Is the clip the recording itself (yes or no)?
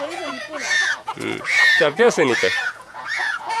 no